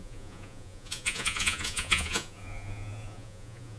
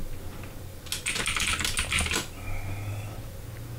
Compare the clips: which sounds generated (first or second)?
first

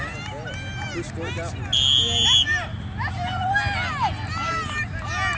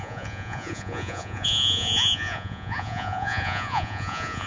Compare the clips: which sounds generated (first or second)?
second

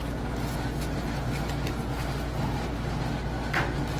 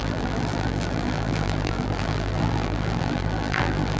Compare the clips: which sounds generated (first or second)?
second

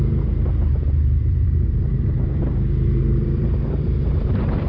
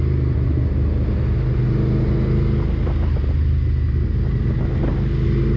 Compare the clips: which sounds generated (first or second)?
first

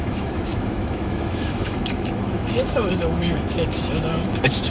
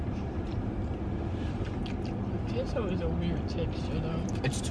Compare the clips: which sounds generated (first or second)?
first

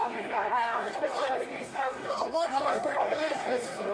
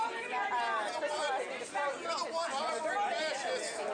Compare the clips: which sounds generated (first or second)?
first